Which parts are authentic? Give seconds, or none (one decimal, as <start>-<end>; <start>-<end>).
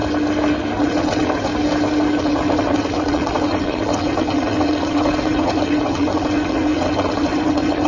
0.0-0.8; 1.5-2.2